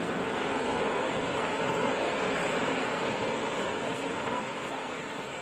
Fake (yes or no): yes